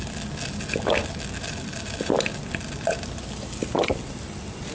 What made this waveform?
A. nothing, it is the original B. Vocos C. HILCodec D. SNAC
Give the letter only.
A